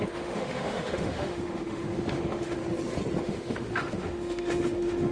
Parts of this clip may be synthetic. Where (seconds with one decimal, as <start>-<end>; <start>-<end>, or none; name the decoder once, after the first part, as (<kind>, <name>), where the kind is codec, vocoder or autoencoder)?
0.0-2.6 (autoencoder, DAC-VAE); 3.2-5.1